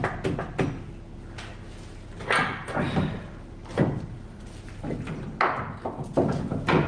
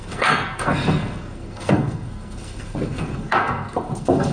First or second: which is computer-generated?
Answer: second